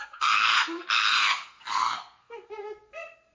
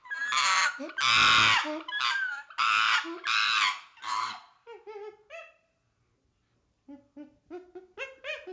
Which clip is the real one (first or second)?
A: second